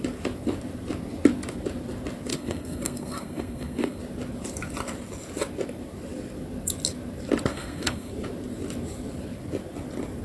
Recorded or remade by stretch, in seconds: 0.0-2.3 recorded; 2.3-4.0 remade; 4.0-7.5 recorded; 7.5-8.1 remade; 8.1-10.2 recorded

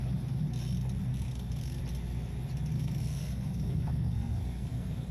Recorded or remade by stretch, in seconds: 0.0-1.1 recorded; 1.1-1.8 remade; 1.8-2.7 recorded; 2.7-5.1 remade

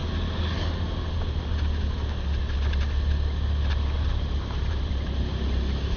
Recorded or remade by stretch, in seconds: 0.0-4.1 recorded; 4.1-4.9 remade; 4.9-6.0 recorded

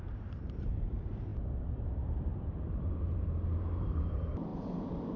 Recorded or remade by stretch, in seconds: 0.0-5.2 remade

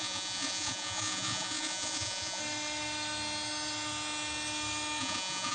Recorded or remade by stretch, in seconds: 0.0-2.4 remade; 2.4-5.0 recorded; 5.0-5.5 remade

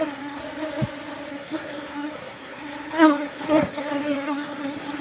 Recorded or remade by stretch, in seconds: 0.0-0.4 remade; 0.4-1.3 recorded; 1.3-5.0 remade